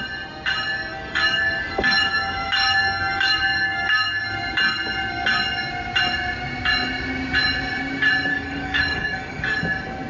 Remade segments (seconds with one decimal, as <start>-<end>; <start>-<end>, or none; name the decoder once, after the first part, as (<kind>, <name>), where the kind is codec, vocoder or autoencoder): 0.9-4.2 (codec, DAC); 8.3-9.6